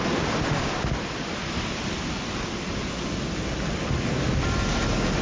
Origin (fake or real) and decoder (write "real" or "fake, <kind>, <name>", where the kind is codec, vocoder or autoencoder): real